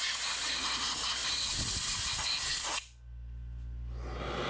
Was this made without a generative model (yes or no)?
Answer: yes